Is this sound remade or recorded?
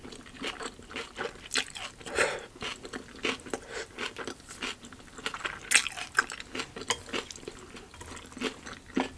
recorded